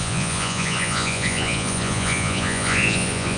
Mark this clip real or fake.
fake